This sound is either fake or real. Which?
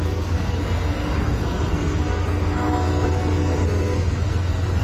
fake